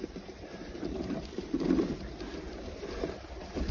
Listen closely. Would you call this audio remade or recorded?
remade